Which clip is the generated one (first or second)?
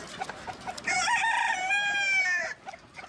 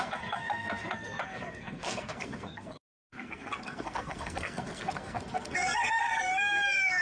second